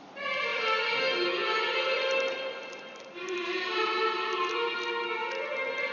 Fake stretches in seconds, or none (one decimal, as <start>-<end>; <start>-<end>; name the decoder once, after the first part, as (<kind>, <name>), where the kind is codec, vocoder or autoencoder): none